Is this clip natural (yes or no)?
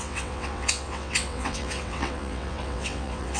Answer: no